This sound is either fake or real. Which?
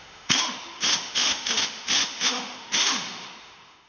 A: fake